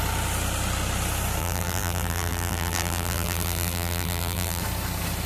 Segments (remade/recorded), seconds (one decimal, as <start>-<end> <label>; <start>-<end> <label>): 0.0-1.4 recorded; 1.4-4.6 remade; 4.6-5.3 recorded